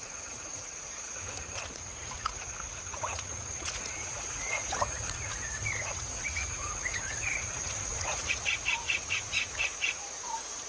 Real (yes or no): no